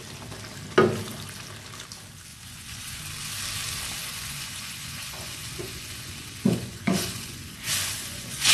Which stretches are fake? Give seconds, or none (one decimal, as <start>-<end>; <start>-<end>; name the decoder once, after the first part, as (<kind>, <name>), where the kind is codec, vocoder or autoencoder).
2.3-3.0 (vocoder, Vocos); 4.0-8.5